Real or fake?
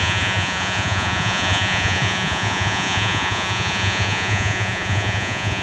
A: fake